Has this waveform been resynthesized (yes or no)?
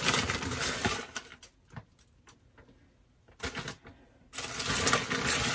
no